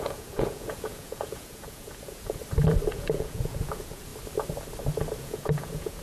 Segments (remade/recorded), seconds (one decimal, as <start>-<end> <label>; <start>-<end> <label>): 0.0-2.4 remade; 2.4-2.9 recorded; 2.9-4.1 remade; 4.1-5.2 recorded; 5.2-6.0 remade